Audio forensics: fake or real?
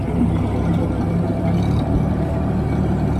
real